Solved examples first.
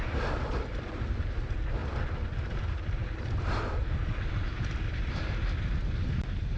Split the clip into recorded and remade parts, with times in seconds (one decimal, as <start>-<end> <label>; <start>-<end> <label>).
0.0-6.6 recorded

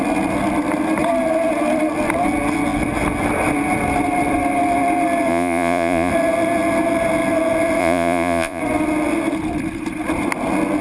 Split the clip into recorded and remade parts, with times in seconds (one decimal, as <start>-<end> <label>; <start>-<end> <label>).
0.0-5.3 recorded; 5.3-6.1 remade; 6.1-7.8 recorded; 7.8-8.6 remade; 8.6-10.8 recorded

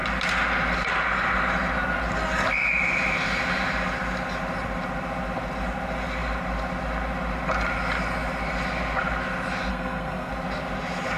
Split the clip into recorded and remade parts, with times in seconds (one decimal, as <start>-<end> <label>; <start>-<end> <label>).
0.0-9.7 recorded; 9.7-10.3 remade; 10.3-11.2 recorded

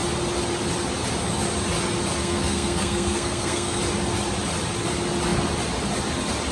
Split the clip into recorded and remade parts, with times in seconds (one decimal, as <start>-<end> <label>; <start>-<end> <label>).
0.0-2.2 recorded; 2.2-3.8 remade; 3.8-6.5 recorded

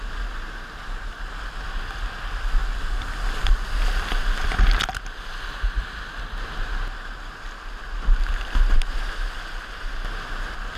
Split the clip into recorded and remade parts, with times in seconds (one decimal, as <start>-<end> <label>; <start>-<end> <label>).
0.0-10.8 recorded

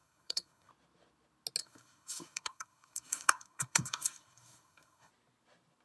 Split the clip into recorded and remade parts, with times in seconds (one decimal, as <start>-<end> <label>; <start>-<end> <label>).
0.0-0.7 remade; 0.7-1.6 recorded; 1.6-5.1 remade; 5.1-5.8 recorded